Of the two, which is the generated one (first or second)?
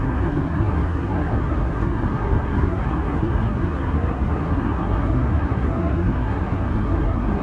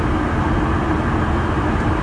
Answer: first